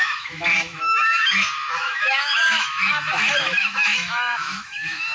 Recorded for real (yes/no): no